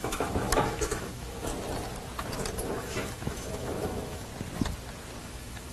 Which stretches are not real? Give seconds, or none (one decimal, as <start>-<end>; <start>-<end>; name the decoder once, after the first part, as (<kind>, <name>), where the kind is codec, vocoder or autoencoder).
0.0-1.5 (autoencoder, DAC-VAE); 2.8-4.3; 5.2-5.7